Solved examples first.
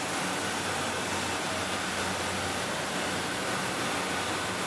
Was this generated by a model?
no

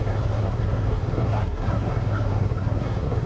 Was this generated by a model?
yes